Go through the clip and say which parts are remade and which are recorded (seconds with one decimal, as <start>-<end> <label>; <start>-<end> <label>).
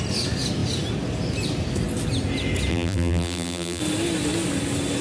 0.0-2.7 recorded; 2.7-3.8 remade; 3.8-5.0 recorded